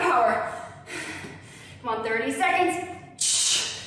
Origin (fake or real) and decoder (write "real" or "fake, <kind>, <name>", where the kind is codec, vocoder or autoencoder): real